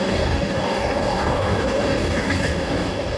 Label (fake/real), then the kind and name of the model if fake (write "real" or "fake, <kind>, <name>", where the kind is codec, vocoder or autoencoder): fake, codec, DAC